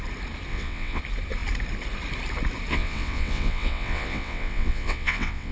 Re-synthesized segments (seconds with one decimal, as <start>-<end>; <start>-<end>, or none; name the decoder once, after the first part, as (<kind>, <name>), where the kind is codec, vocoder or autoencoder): 0.5-1.0 (vocoder, WaveNeXt); 2.7-5.5

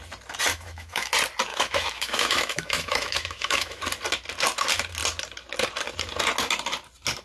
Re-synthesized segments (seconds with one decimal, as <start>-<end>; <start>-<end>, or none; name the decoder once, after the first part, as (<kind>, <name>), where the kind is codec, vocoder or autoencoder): 0.5-1.1 (autoencoder, DAC-VAE); 1.5-3.8

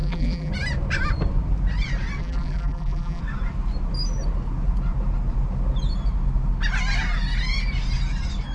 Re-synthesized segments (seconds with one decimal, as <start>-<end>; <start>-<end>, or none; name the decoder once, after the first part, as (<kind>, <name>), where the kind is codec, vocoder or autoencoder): 0.0-0.5 (vocoder, BigVGAN v2); 2.2-3.2

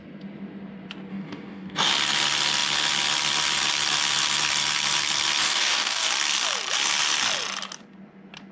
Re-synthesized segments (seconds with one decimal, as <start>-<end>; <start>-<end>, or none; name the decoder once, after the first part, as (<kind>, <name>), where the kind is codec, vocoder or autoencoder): 1.1-1.9 (codec, DAC); 5.4-6.1

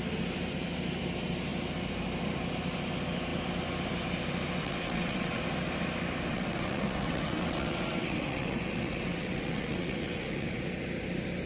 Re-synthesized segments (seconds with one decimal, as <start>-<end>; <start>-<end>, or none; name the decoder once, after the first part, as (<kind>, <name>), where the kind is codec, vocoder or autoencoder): 4.6-5.4 (vocoder, WaveNeXt); 6.3-10.6

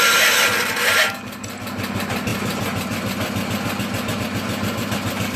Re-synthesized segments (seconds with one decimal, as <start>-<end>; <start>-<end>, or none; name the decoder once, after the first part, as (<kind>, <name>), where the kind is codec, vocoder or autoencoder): none

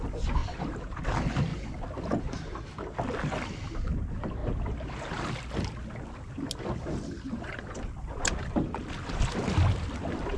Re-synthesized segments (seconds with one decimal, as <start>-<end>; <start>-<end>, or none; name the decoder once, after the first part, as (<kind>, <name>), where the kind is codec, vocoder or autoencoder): 0.4-1.0 (vocoder, BigVGAN v2); 4.4-5.2

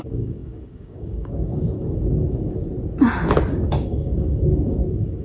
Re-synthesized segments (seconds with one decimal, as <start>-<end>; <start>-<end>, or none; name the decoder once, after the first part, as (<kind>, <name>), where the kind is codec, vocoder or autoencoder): 0.0-2.6 (codec, DAC); 3.5-5.2